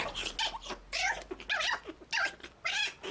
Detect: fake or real real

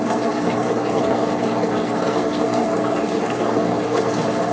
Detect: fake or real fake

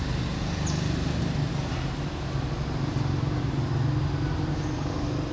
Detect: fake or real real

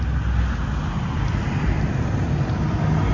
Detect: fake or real real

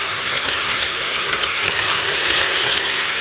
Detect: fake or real fake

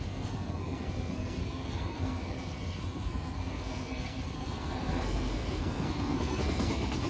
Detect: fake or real fake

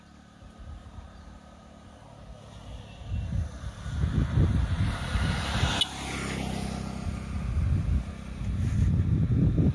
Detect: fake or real real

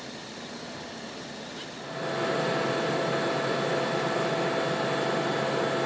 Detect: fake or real real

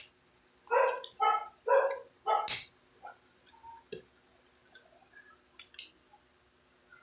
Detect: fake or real real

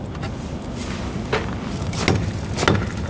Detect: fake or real real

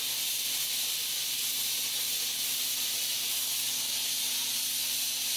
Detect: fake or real real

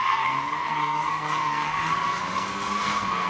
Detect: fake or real fake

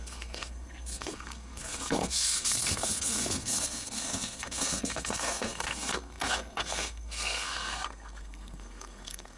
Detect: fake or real fake